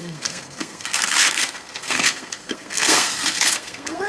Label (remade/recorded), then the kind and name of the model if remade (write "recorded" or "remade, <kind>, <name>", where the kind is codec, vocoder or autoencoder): remade, codec, SNAC